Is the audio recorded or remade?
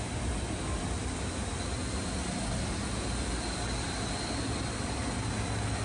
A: recorded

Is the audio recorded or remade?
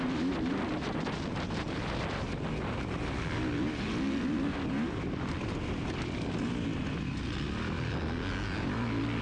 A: recorded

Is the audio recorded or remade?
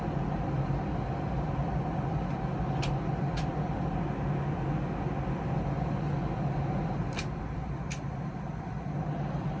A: recorded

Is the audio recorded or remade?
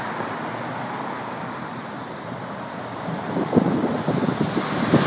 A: remade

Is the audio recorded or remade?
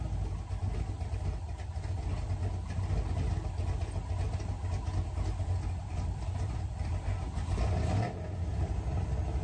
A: recorded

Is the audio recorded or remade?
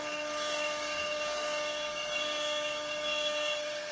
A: remade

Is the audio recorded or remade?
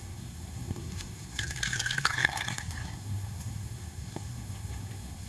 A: remade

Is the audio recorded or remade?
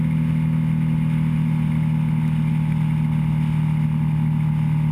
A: recorded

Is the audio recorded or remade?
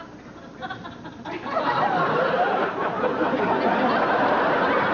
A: recorded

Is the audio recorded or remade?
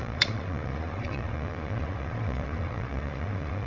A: remade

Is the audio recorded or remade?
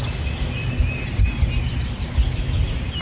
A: recorded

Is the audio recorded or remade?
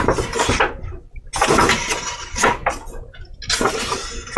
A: recorded